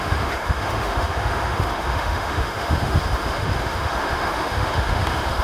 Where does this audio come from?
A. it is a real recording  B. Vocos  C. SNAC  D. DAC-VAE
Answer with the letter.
D